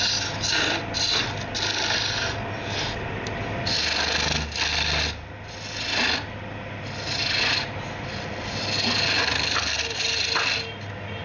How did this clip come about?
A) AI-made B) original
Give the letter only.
B